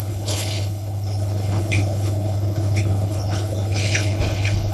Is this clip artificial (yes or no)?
yes